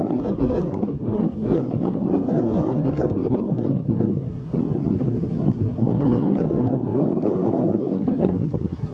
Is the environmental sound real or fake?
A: fake